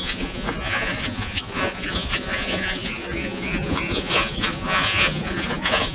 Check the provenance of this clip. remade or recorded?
remade